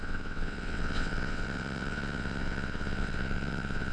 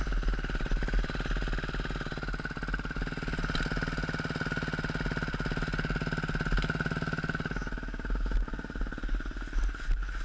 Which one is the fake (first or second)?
first